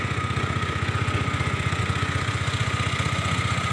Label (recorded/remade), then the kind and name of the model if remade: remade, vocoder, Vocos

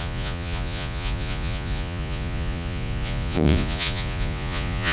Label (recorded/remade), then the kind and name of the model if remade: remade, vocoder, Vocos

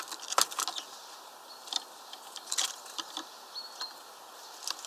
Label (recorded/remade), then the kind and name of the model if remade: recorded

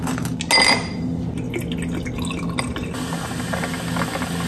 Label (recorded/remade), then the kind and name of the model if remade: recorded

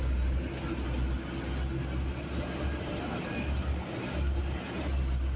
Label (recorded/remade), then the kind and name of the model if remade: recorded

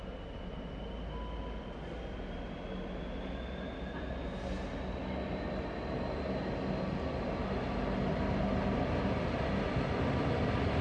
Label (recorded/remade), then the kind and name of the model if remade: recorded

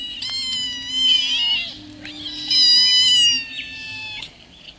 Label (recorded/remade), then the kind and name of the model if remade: recorded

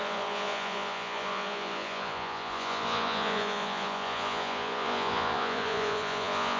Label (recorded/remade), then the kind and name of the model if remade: remade, vocoder, Vocos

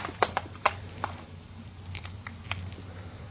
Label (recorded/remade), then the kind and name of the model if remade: remade, vocoder, BigVGAN v2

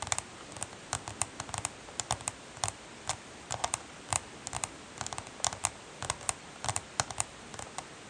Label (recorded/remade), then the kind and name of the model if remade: recorded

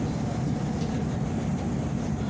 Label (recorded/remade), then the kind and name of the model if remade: recorded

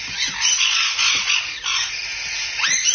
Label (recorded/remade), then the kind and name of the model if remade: recorded